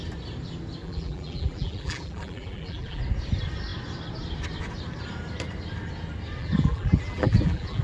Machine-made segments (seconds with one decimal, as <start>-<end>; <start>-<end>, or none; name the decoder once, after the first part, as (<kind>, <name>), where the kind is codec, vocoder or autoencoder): 0.8-3.0 (vocoder, BigVGAN v2); 6.4-7.8